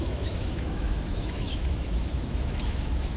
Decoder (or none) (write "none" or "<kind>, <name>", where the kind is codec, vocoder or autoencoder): autoencoder, DAC-VAE